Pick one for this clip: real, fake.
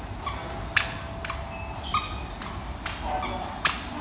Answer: real